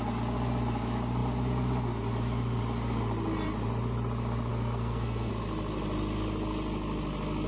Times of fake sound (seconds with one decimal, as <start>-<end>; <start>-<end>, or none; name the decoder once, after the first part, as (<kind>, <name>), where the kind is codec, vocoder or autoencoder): 4.5-5.3 (codec, SNAC)